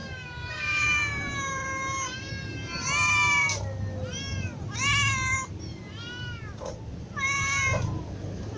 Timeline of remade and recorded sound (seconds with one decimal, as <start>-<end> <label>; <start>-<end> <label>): 0.0-2.3 remade; 2.3-8.6 recorded